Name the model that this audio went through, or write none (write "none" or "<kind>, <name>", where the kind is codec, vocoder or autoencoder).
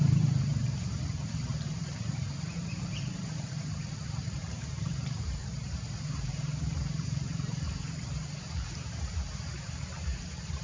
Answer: vocoder, BigVGAN v2